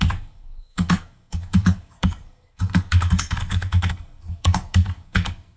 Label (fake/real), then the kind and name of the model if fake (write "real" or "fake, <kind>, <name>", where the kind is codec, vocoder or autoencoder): fake, codec, SNAC